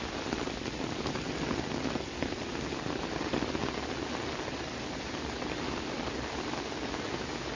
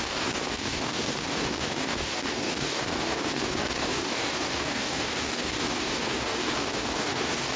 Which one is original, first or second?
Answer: first